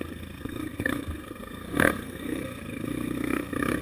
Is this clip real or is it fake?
fake